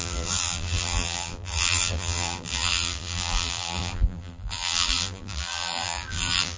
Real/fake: fake